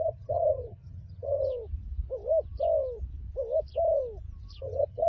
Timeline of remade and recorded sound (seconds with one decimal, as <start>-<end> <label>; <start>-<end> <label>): 0.0-1.5 remade; 1.5-4.6 recorded; 4.6-5.1 remade